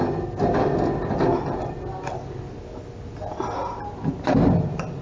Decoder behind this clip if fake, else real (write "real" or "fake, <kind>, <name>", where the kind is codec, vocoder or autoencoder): real